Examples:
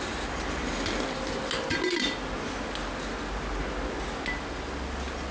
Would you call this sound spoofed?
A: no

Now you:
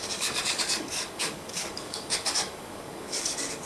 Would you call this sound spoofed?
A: yes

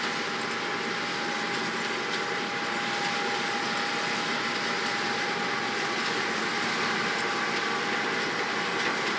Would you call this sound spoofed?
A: no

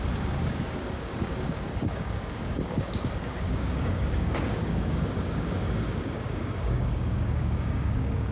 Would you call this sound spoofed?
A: yes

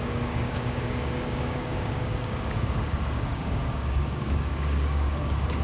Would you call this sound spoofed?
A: yes